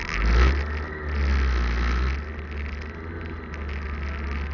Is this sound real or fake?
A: real